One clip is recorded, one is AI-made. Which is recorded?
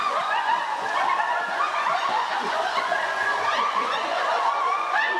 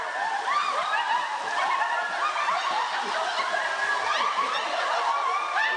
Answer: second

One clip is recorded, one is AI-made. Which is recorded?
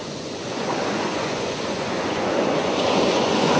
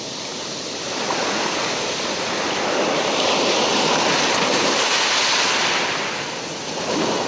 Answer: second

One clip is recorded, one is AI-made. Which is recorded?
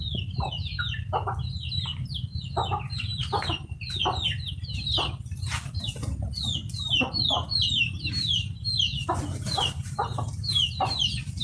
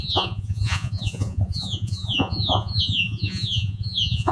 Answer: first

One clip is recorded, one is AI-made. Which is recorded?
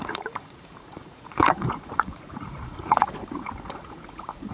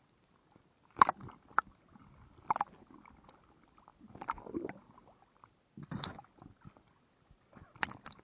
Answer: second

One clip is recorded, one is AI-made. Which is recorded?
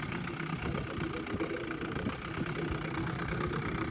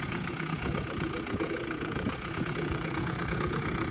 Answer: first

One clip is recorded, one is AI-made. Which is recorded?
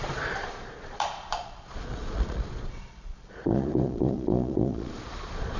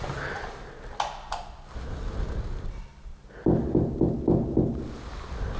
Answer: second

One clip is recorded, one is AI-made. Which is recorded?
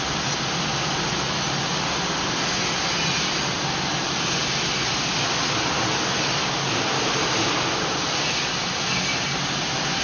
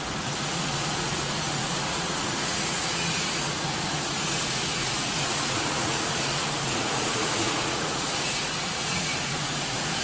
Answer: first